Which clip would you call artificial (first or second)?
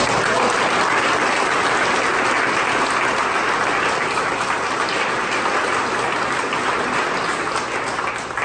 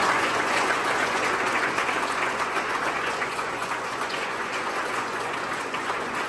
second